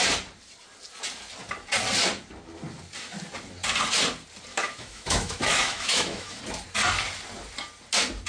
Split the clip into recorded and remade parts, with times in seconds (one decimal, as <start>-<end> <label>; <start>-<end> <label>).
0.0-4.5 recorded; 4.5-6.4 remade; 6.4-8.3 recorded